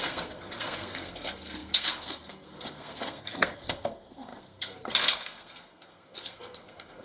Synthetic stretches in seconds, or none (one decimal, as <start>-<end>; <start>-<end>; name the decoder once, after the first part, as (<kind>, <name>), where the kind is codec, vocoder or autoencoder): 0.0-7.0 (codec, SNAC)